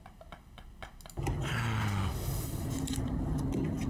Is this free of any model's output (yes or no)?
yes